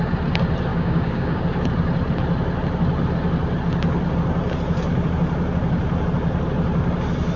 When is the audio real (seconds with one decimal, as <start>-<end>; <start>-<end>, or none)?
0.0-0.7; 1.4-7.4